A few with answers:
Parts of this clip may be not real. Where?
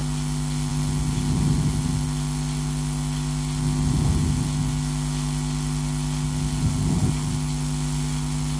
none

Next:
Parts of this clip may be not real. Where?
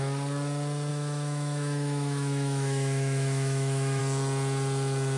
0.9-4.0 (autoencoder, DAC-VAE)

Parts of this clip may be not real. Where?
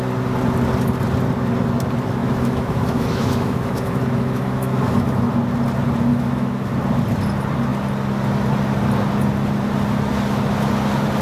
2.2-5.2 (autoencoder, DAC-VAE); 6.1-6.7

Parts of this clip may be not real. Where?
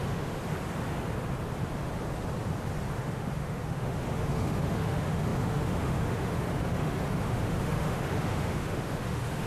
0.0-0.4 (autoencoder, DAC-VAE); 3.0-9.5